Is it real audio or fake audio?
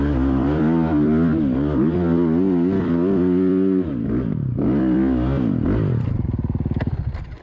fake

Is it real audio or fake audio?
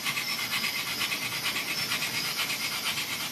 fake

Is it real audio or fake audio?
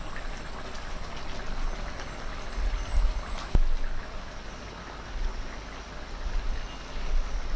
real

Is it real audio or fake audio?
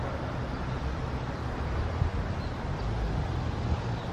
real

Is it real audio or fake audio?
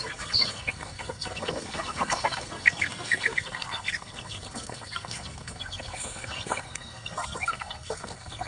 fake